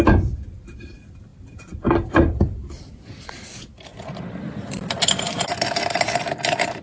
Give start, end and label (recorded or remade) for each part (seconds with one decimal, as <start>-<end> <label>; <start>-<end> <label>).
0.0-1.3 recorded; 1.3-2.9 remade; 2.9-3.9 recorded; 3.9-5.5 remade; 5.5-6.8 recorded